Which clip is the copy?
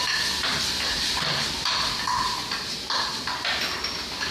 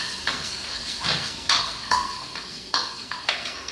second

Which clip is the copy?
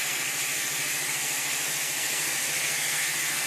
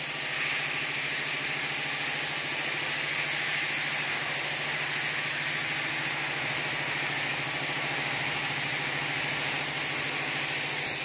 first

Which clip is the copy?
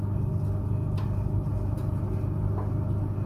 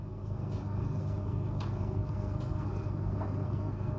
second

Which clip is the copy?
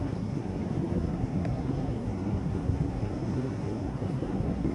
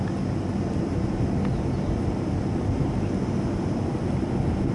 first